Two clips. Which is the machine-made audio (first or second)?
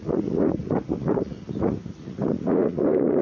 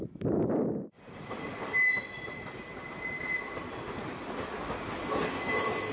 first